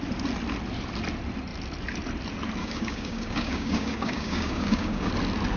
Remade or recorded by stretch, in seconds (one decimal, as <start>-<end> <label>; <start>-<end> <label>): 0.0-2.6 recorded; 2.6-5.1 remade; 5.1-5.6 recorded